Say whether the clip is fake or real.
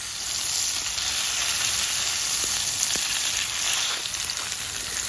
real